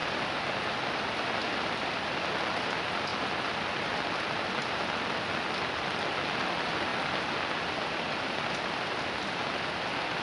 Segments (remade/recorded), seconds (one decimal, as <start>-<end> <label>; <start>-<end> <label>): 0.0-10.2 recorded